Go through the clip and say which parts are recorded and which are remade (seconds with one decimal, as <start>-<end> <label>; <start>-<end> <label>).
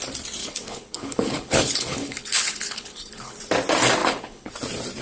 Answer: 0.0-0.4 recorded; 0.4-3.4 remade; 3.4-4.0 recorded; 4.0-4.5 remade; 4.5-5.0 recorded